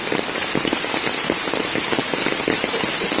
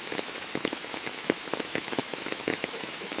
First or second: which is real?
first